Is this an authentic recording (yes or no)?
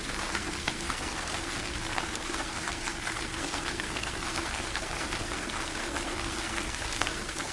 no